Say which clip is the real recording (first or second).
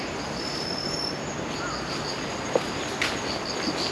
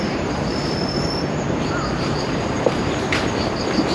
first